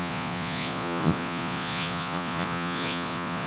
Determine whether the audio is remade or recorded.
remade